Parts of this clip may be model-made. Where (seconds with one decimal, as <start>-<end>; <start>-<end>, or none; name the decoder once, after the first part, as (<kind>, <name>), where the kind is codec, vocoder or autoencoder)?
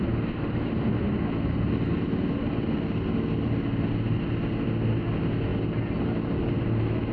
none